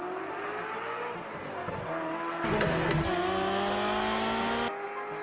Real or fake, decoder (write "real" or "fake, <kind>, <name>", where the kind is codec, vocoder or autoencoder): real